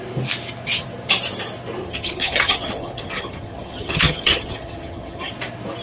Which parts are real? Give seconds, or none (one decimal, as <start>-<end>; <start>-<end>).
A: 0.0-1.8; 5.3-5.8